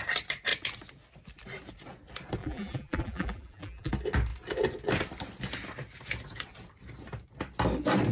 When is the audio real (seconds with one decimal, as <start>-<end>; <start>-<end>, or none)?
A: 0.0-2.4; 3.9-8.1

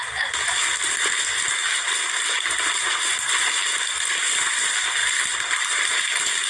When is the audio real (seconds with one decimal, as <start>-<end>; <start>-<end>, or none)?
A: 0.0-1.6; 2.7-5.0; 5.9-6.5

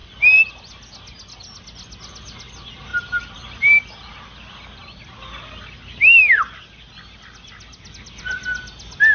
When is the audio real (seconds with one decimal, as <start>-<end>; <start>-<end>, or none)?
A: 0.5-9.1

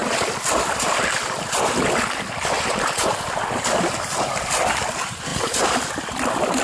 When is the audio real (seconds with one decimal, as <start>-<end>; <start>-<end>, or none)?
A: 0.0-6.6